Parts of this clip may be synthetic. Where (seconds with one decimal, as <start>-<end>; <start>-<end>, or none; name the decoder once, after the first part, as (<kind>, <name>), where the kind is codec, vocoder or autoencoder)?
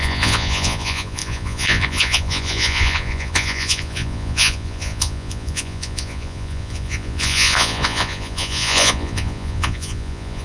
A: 0.0-10.4 (vocoder, Vocos)